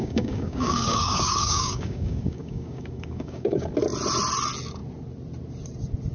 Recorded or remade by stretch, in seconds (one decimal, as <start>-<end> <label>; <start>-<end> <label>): 0.0-3.7 remade; 3.7-6.1 recorded

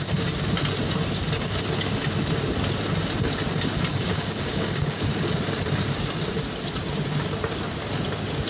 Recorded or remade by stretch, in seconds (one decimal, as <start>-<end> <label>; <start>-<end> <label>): 0.0-3.9 recorded; 3.9-5.0 remade; 5.0-8.5 recorded

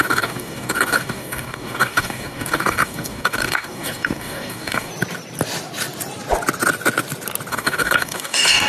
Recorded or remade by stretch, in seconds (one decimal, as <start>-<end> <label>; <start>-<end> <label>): 0.0-4.9 remade; 4.9-7.5 recorded; 7.5-8.7 remade

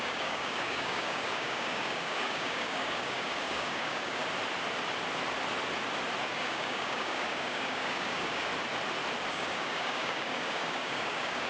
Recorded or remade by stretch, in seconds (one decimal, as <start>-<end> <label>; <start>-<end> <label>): 0.0-4.2 remade; 4.2-6.2 recorded; 6.2-8.5 remade; 8.5-9.3 recorded; 9.3-11.5 remade

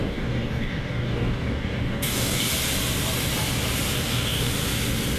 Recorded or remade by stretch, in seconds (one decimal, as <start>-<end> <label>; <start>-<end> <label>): 0.0-2.5 remade; 2.5-4.0 recorded; 4.0-4.5 remade; 4.5-5.2 recorded

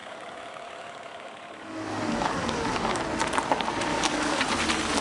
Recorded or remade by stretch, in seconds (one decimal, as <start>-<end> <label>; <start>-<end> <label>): 0.0-3.0 remade; 3.0-3.9 recorded; 3.9-4.4 remade; 4.4-5.0 recorded

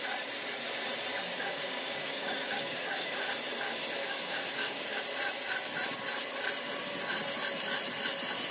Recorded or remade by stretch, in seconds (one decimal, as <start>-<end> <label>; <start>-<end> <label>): 0.0-1.1 recorded; 1.1-3.2 remade; 3.2-4.0 recorded; 4.0-5.0 remade; 5.0-8.5 recorded